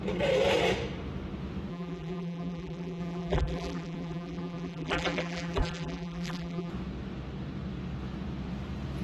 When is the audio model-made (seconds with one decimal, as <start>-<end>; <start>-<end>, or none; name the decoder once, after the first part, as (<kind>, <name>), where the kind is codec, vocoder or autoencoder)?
1.7-6.7 (vocoder, BigVGAN v2)